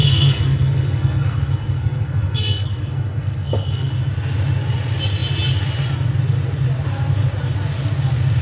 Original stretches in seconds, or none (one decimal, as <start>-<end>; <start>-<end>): 3.9-8.4